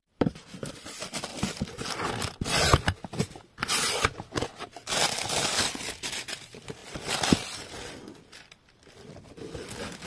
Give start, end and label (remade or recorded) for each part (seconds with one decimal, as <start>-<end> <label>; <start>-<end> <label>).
0.0-0.7 remade; 0.7-6.8 recorded; 6.8-8.1 remade; 8.1-10.1 recorded